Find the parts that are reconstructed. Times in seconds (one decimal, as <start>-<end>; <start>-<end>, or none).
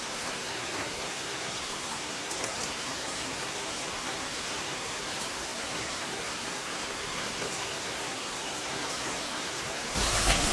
0.0-10.5